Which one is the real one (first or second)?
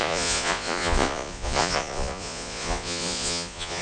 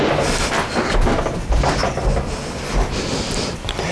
second